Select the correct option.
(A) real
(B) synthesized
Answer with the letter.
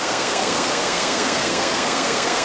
B